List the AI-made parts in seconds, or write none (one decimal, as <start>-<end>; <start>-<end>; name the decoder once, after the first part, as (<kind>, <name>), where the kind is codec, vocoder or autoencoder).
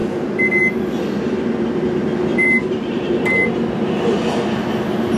2.3-3.5 (vocoder, BigVGAN v2)